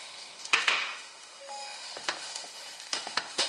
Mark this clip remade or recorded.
remade